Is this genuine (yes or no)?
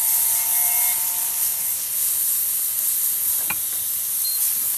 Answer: yes